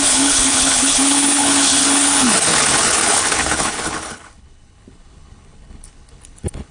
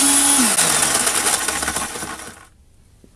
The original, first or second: second